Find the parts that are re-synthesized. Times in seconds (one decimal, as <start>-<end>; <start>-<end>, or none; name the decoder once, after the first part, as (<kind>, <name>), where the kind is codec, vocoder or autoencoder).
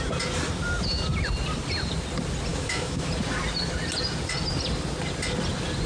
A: 2.5-3.1 (autoencoder, DAC-VAE)